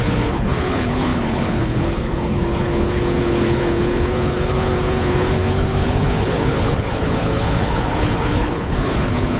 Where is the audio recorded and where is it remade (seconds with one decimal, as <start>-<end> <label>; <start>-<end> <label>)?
0.0-9.4 remade